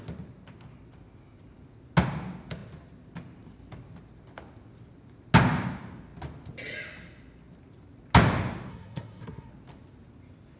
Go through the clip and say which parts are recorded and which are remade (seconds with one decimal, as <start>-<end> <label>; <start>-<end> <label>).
0.0-8.7 recorded; 8.7-9.5 remade; 9.5-10.6 recorded